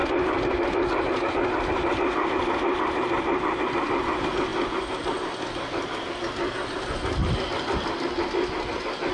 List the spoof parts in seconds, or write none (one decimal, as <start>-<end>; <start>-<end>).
none